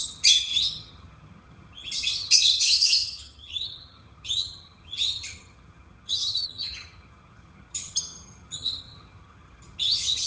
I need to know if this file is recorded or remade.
remade